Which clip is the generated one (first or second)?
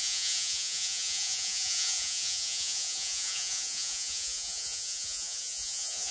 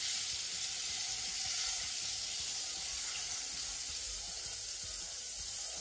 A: first